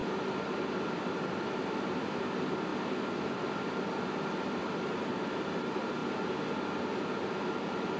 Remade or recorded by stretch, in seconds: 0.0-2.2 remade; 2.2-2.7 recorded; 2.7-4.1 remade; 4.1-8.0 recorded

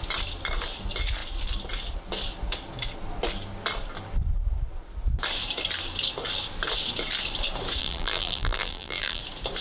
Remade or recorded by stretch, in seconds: 0.0-7.8 recorded; 7.8-9.2 remade; 9.2-9.6 recorded